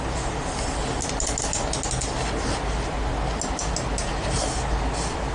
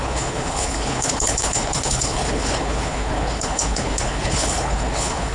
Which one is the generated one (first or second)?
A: second